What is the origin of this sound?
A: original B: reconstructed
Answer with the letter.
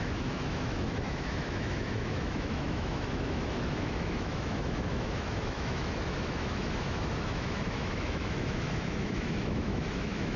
B